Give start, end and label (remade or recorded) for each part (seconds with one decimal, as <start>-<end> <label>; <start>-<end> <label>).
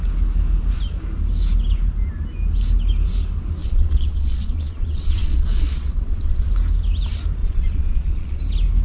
0.0-3.6 recorded; 3.6-6.5 remade; 6.5-7.4 recorded; 7.4-8.4 remade; 8.4-8.8 recorded